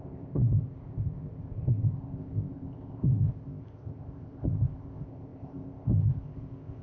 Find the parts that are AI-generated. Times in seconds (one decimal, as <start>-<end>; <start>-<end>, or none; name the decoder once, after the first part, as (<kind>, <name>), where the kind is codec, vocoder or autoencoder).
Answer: 0.0-6.8 (codec, ZipCodec)